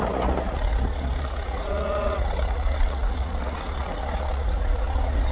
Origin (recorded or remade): remade